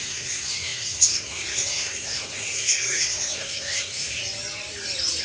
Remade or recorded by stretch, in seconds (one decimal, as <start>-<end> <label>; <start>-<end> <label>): 0.0-4.2 remade; 4.2-5.2 recorded